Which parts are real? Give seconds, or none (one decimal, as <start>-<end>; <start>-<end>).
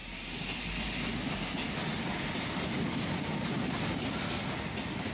0.0-5.1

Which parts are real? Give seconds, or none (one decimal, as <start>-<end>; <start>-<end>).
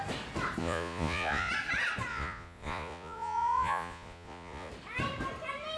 0.0-0.6; 1.5-2.1; 4.7-5.8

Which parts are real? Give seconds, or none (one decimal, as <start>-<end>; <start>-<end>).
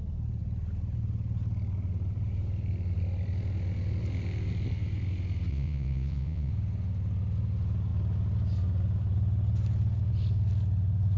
0.0-5.5; 6.5-11.2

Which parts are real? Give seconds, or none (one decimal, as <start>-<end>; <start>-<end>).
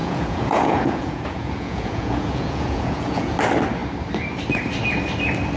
3.4-5.6